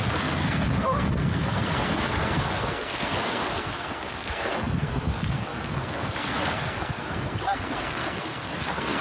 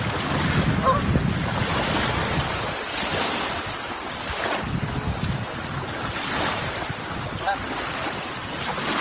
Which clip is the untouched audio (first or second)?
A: second